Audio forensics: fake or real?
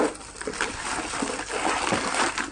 real